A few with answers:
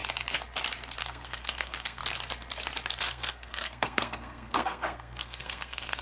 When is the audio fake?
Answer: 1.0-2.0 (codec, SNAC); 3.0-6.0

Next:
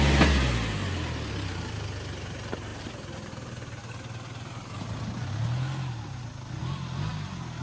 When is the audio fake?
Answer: none

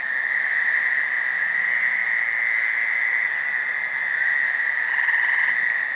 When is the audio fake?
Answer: none

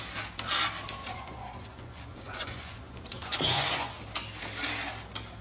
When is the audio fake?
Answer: 1.0-4.0 (vocoder, Vocos)

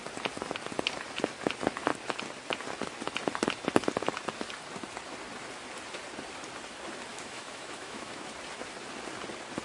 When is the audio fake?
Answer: 7.1-8.3 (autoencoder, DAC-VAE)

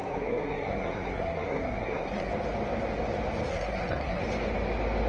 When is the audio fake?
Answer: 0.0-2.3 (codec, SNAC); 3.5-4.2

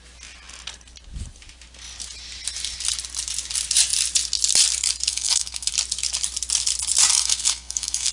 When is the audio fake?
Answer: 5.1-5.7 (codec, SNAC); 7.1-8.1

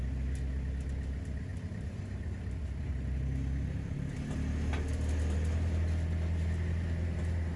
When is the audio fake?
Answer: none